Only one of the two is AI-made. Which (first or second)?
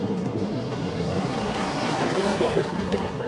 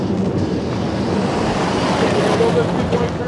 first